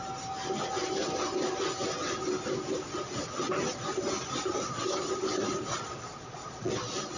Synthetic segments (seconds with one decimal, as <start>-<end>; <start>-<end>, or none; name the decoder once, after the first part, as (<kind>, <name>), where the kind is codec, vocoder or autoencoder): 6.1-6.7 (vocoder, Vocos)